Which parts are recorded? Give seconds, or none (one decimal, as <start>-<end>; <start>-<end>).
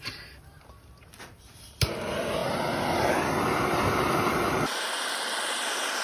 0.0-6.0